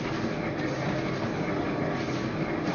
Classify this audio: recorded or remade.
recorded